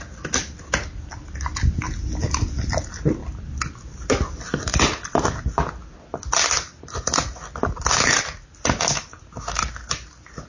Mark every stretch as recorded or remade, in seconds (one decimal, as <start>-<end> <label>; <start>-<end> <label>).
0.0-10.5 recorded

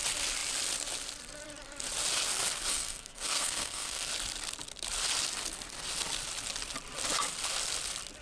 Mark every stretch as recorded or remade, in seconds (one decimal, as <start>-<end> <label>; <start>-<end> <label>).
0.0-2.7 recorded; 2.7-4.1 remade; 4.1-8.2 recorded

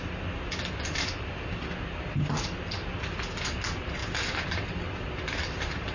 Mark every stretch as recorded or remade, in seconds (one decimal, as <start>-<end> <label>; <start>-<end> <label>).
0.0-5.9 recorded

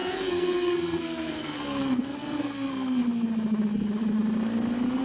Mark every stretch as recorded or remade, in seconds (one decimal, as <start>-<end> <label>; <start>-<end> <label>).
0.0-3.0 remade; 3.0-5.0 recorded